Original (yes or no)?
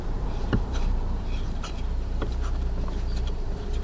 no